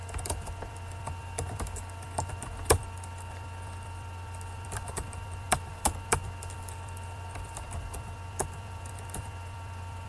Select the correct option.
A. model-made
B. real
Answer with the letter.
A